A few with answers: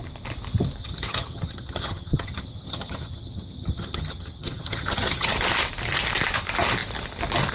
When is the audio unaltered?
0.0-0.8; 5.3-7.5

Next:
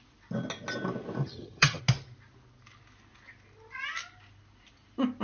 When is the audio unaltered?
0.0-1.2; 1.8-5.2

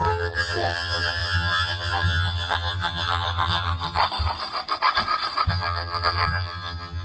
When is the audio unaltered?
4.0-5.5

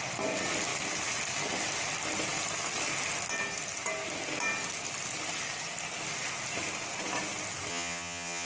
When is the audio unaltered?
0.0-7.7

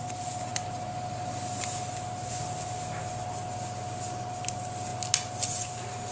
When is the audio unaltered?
0.0-6.1

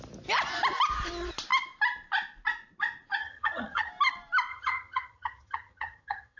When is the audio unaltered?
0.0-3.2; 3.9-4.5